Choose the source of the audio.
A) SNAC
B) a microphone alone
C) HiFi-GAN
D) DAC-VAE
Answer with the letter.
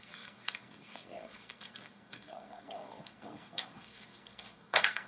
A